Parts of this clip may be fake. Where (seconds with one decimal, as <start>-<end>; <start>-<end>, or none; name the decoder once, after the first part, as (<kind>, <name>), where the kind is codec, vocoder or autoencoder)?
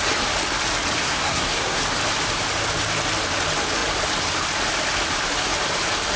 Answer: 1.0-1.8 (codec, SNAC)